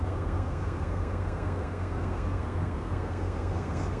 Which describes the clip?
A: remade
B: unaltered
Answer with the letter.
A